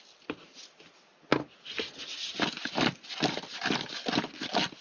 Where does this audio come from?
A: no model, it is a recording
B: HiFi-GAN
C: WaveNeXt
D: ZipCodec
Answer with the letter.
A